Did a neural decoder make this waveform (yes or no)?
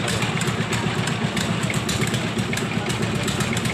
no